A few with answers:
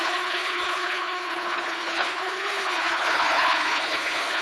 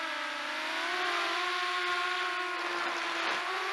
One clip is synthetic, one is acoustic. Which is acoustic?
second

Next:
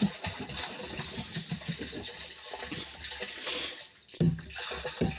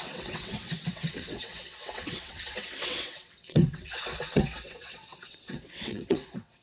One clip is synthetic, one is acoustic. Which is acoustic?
first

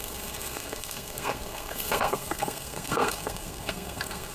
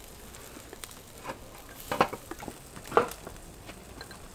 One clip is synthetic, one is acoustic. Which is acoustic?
second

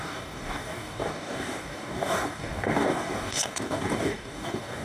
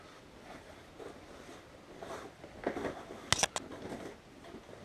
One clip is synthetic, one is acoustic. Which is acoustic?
second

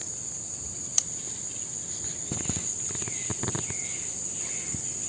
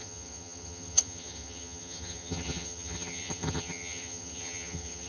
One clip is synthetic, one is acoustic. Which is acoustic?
first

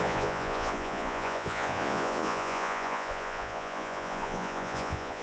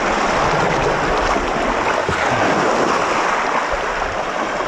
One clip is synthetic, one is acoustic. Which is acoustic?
second